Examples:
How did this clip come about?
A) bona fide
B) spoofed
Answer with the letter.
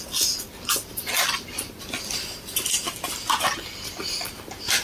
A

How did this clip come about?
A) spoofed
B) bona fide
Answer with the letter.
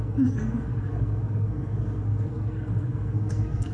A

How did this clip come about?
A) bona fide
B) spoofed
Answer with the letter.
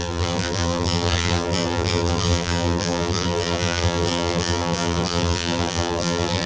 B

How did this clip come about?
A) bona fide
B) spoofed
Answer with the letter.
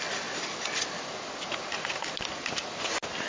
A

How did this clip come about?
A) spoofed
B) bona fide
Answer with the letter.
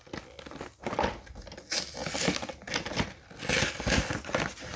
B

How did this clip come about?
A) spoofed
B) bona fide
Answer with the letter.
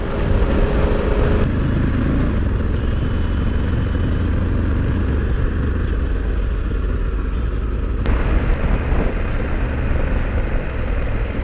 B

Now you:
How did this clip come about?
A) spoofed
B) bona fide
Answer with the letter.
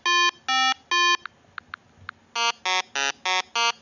B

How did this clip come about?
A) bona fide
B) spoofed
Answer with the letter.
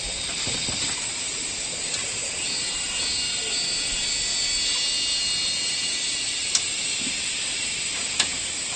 A